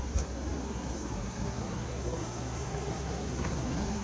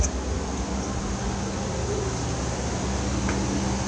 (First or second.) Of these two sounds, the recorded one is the second